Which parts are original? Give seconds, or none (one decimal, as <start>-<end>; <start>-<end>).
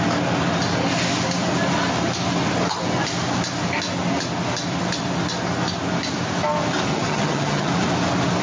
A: 0.0-6.9; 7.7-8.4